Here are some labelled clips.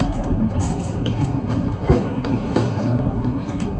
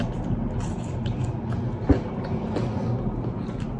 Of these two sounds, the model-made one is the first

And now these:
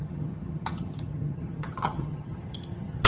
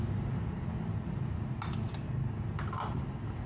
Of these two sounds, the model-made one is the first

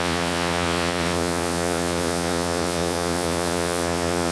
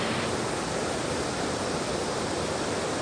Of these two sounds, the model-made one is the first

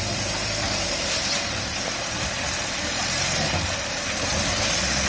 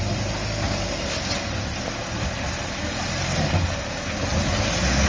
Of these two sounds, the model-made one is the first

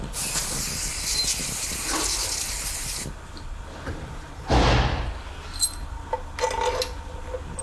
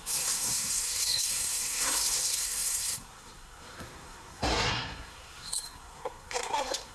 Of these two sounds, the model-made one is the second